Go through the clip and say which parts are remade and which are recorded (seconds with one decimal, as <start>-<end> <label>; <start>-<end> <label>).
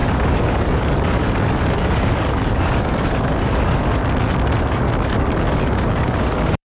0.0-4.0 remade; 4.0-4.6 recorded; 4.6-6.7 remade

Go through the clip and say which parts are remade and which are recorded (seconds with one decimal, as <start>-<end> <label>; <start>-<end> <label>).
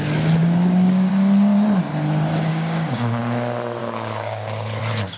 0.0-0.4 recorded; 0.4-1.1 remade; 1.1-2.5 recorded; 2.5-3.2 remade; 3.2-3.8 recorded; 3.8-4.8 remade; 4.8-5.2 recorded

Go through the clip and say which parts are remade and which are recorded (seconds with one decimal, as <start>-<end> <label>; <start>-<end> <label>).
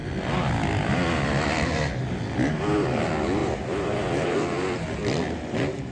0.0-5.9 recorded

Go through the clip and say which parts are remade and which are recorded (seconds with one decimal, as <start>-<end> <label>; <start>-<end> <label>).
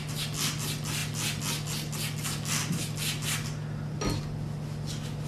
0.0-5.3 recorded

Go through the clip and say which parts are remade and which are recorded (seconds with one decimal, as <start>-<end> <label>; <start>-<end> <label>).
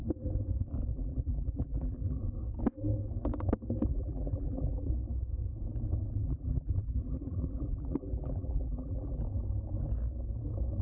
0.0-0.9 recorded; 0.9-2.2 remade; 2.2-3.9 recorded; 3.9-4.9 remade; 4.9-6.2 recorded; 6.2-9.2 remade; 9.2-10.8 recorded